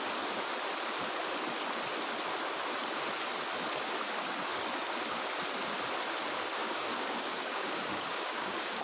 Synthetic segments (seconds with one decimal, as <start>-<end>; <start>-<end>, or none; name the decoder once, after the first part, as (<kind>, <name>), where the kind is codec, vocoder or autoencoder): 6.6-8.8 (codec, DAC)